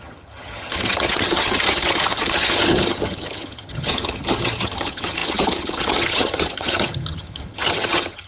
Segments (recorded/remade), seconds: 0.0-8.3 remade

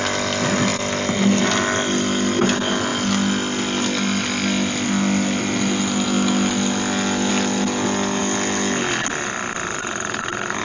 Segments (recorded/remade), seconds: 0.0-10.6 recorded

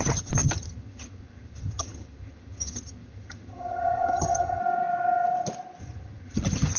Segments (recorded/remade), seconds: 0.0-4.6 remade; 4.6-5.8 recorded; 5.8-6.8 remade

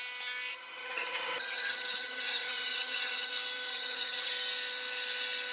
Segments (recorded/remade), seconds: 0.0-0.5 recorded; 0.5-3.3 remade; 3.3-3.7 recorded; 3.7-4.3 remade; 4.3-5.5 recorded

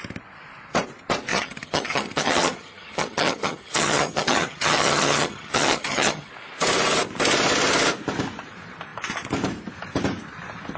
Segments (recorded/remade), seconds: 0.0-1.3 recorded; 1.3-6.3 remade; 6.3-10.8 recorded